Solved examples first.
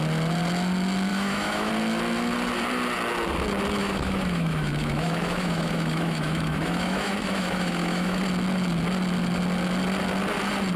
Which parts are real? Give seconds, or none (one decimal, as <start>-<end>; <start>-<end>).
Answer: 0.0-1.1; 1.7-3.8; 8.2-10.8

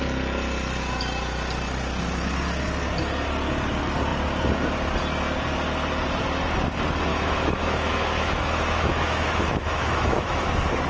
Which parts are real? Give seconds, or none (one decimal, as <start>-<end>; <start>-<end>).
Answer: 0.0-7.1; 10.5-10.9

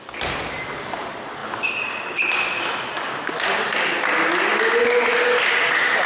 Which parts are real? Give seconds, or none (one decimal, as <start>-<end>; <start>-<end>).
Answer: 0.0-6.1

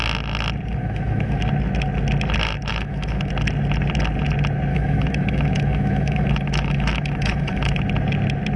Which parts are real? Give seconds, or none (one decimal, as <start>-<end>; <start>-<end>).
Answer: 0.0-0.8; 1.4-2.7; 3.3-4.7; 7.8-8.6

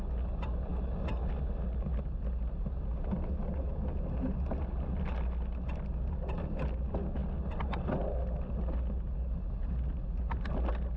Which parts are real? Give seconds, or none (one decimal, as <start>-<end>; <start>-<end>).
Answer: 0.0-11.0